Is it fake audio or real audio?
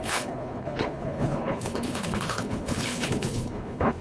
fake